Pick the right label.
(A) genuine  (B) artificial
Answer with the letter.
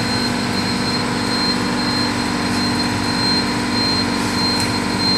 A